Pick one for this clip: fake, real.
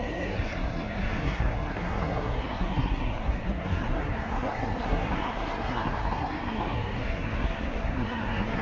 fake